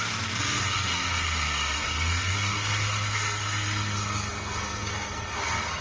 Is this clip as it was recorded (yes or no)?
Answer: no